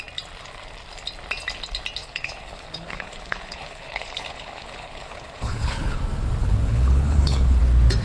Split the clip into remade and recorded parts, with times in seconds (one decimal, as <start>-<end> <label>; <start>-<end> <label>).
0.0-2.0 recorded; 2.0-6.0 remade; 6.0-6.4 recorded; 6.4-7.6 remade; 7.6-8.0 recorded